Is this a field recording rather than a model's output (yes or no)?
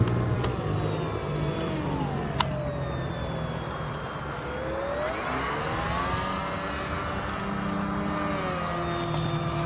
yes